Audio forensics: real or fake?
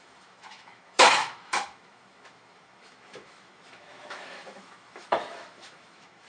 fake